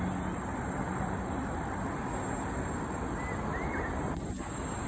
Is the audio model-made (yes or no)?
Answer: no